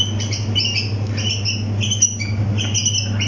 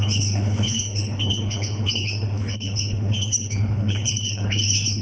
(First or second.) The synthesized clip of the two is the second